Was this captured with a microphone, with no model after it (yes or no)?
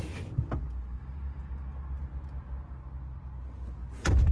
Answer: yes